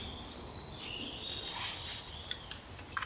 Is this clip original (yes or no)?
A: yes